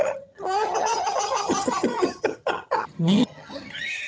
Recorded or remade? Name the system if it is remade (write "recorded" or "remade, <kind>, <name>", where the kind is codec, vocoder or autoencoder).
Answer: remade, vocoder, HiFi-GAN